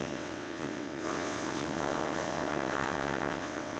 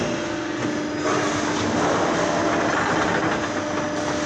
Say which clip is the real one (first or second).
second